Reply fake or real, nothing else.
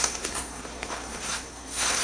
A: fake